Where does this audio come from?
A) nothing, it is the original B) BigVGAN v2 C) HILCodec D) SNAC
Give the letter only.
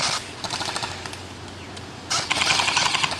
A